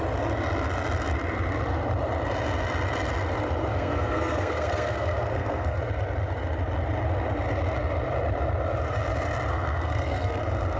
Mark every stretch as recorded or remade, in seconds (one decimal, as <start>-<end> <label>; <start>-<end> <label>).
0.0-3.6 recorded; 3.6-5.8 remade; 5.8-9.5 recorded; 9.5-10.4 remade; 10.4-10.8 recorded